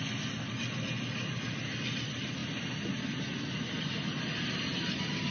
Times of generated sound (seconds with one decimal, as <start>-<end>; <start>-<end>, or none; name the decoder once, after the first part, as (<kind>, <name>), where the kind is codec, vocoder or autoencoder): none